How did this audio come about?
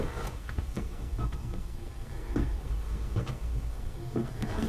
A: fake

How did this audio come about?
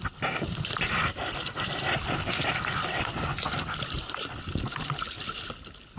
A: real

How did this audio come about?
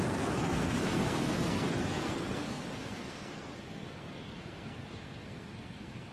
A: fake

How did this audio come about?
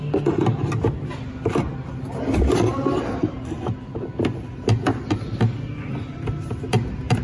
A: real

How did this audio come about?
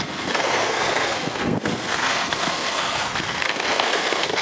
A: fake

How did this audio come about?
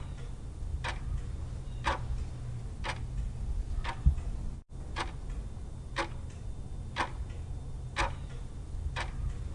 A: real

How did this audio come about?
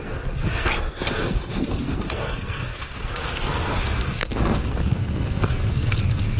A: fake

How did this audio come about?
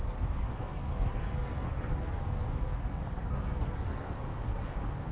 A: fake